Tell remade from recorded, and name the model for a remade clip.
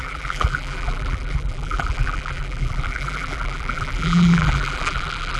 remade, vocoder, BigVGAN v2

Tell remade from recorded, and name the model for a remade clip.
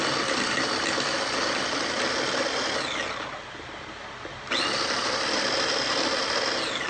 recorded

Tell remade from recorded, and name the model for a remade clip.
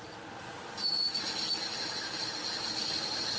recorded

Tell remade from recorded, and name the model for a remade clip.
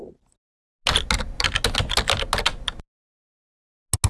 recorded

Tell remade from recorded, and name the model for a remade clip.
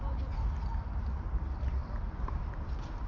recorded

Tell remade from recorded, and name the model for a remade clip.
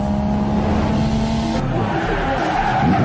recorded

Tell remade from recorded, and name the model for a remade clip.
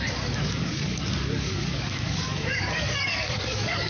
remade, codec, DAC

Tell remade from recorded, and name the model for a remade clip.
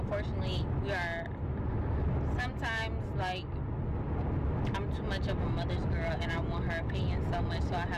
recorded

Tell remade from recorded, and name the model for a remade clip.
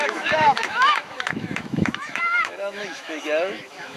remade, autoencoder, DAC-VAE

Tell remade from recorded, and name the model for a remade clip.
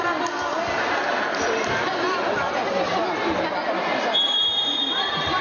recorded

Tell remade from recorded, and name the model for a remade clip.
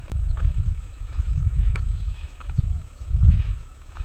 remade, autoencoder, DAC-VAE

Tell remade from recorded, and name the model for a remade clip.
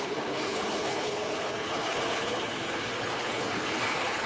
remade, codec, HILCodec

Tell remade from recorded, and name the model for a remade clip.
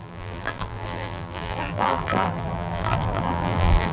remade, vocoder, BigVGAN v2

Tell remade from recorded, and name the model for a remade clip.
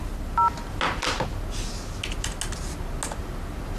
recorded